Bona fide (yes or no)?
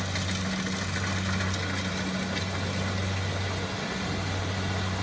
yes